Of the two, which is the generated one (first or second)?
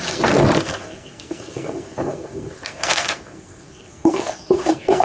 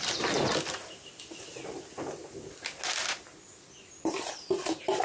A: first